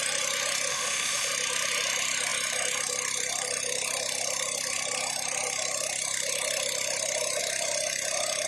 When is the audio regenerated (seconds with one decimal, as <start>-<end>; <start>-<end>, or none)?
0.7-1.3